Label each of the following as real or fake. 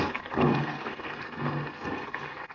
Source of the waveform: fake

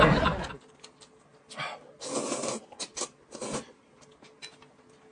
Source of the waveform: real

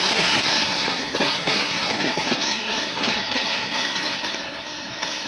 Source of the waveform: fake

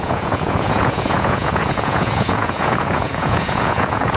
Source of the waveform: fake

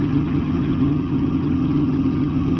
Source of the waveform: fake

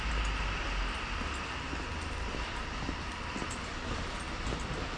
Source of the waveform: real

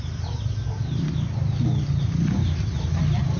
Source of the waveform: real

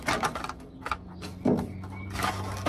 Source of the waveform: real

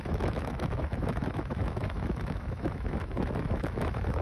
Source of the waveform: fake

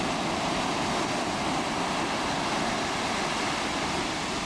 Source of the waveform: real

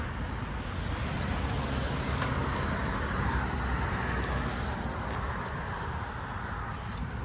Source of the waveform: real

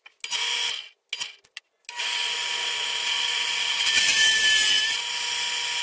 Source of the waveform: real